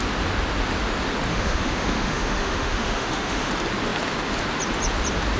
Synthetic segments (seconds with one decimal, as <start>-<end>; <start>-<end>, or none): 1.3-3.5